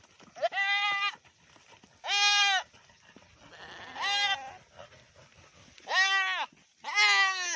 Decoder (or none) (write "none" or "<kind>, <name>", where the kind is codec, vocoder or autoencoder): none